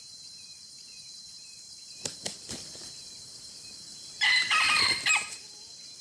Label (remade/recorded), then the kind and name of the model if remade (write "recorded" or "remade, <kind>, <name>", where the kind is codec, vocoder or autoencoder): remade, vocoder, BigVGAN v2